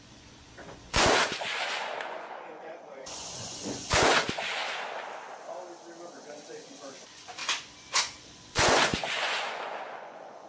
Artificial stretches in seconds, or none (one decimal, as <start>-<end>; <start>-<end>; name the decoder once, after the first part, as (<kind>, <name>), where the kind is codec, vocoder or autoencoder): 0.0-4.6 (vocoder, Vocos); 6.9-10.5